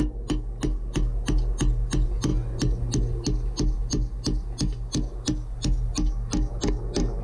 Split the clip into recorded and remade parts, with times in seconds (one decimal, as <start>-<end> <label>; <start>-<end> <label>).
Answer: 0.0-7.2 recorded